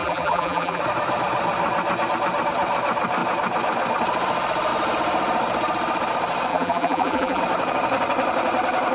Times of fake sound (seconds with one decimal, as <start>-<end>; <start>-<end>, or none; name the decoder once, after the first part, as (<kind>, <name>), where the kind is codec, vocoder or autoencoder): 0.0-0.8 (vocoder, BigVGAN v2); 6.5-7.4